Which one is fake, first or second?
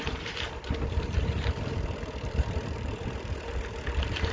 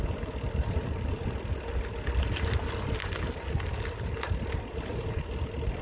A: first